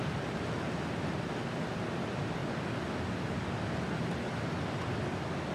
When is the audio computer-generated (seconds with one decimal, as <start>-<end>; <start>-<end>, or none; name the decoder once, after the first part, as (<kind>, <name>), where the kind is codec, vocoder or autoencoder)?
none

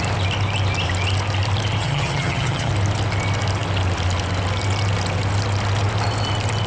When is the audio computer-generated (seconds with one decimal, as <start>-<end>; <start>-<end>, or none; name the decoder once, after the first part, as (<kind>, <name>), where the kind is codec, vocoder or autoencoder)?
1.8-2.7 (vocoder, HiFi-GAN)

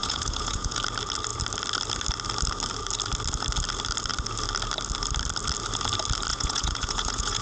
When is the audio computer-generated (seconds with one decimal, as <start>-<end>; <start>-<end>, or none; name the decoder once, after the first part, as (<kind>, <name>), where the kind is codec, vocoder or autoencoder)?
0.0-0.8 (vocoder, Vocos); 6.3-7.4